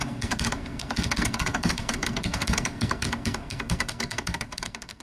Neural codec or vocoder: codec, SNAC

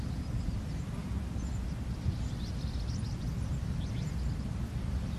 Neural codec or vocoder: none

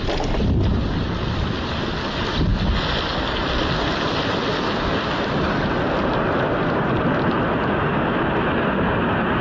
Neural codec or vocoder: none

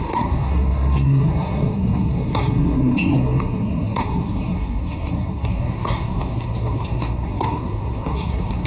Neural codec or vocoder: codec, SNAC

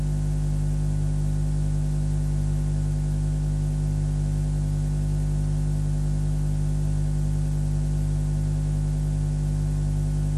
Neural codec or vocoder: none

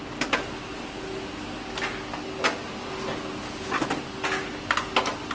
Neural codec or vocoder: none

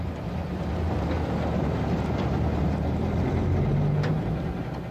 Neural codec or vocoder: none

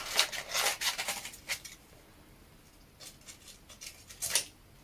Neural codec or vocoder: none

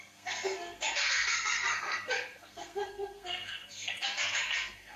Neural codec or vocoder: codec, SNAC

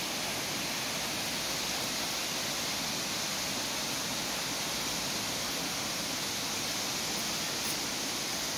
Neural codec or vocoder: none